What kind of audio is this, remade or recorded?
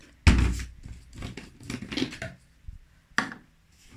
recorded